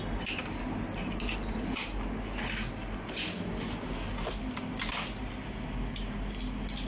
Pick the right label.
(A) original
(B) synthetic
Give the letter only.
A